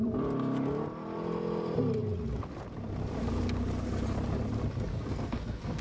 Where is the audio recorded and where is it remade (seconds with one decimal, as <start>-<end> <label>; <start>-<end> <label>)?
0.0-4.9 recorded; 4.9-5.8 remade

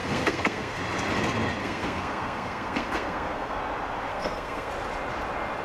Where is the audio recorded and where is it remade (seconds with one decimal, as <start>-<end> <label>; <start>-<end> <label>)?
0.0-0.8 remade; 0.8-1.6 recorded; 1.6-3.6 remade; 3.6-4.1 recorded; 4.1-4.7 remade; 4.7-5.6 recorded

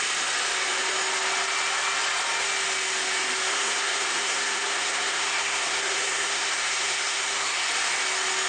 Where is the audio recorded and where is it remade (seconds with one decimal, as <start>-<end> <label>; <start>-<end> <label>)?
0.0-3.5 recorded; 3.5-7.7 remade; 7.7-8.5 recorded

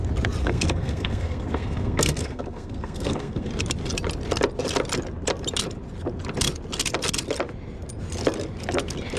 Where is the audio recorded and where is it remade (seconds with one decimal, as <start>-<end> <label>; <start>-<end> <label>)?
0.0-0.4 recorded; 0.4-3.5 remade; 3.5-9.2 recorded